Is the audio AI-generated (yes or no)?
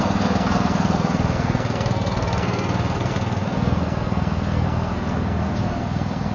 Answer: yes